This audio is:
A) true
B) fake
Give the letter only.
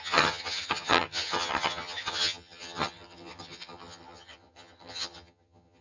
B